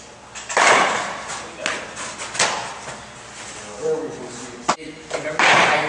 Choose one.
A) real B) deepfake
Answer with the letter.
A